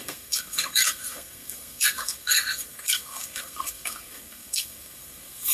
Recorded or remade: remade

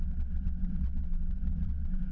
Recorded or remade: remade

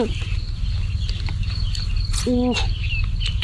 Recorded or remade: recorded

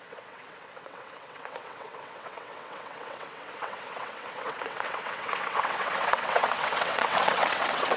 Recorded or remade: remade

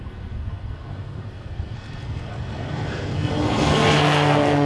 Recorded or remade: remade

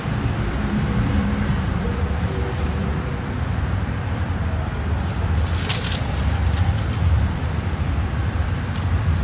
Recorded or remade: remade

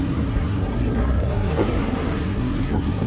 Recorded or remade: remade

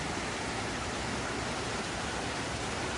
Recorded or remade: recorded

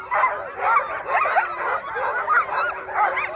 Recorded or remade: recorded